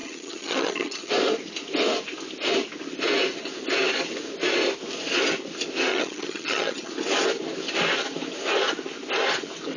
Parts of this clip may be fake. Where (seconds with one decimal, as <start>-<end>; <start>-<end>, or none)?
0.0-1.1; 5.9-6.9